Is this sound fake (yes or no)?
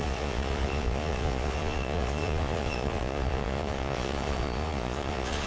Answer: yes